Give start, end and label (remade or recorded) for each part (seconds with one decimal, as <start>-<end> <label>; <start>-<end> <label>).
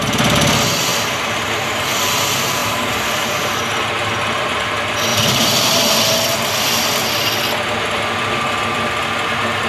0.0-0.9 recorded; 0.9-1.8 remade; 1.8-2.6 recorded; 2.6-3.4 remade; 3.4-5.1 recorded; 5.1-6.0 remade; 6.0-9.7 recorded